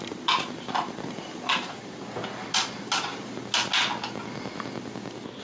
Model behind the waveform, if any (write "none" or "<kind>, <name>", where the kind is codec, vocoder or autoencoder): none